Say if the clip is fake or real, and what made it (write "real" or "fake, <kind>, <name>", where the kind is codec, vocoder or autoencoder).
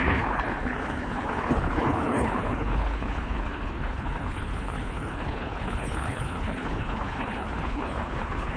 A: fake, codec, HILCodec